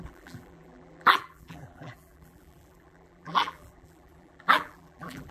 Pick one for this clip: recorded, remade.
remade